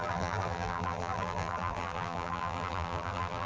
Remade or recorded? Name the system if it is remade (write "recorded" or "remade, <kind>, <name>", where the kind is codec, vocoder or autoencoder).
remade, vocoder, BigVGAN v2